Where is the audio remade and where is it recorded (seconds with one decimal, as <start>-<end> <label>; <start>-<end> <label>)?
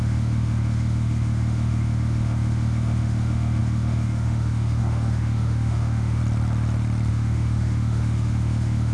0.0-6.2 remade; 6.2-7.1 recorded; 7.1-8.9 remade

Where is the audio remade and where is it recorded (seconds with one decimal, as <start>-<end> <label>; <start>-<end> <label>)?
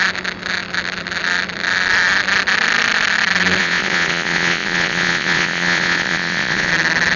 0.0-3.6 recorded; 3.6-6.7 remade; 6.7-7.2 recorded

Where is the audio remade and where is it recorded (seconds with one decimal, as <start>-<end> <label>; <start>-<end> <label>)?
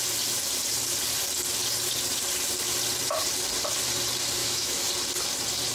0.0-4.4 recorded; 4.4-4.9 remade; 4.9-5.7 recorded